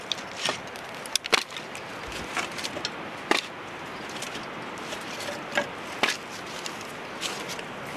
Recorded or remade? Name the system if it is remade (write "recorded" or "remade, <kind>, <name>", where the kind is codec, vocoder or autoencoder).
recorded